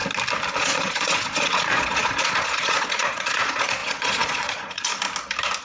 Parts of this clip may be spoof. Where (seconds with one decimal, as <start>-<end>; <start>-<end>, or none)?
0.5-4.9